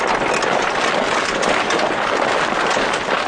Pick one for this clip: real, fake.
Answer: real